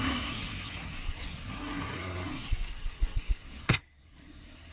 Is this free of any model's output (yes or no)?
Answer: no